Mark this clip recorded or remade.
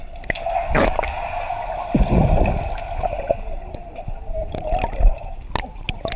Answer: recorded